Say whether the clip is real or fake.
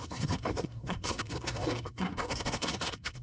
fake